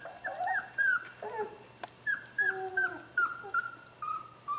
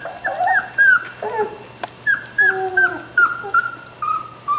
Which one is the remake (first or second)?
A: first